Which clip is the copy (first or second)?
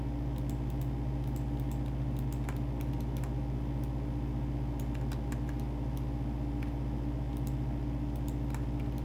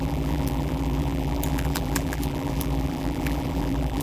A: second